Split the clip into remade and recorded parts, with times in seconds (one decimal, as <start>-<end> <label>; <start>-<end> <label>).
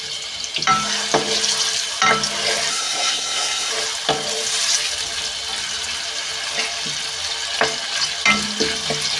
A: 0.0-2.7 recorded; 2.7-3.7 remade; 3.7-9.2 recorded